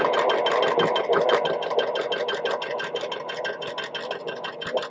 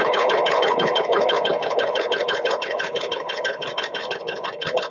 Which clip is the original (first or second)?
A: first